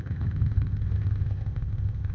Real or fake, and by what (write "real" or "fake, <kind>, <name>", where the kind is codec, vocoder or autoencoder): fake, codec, ZipCodec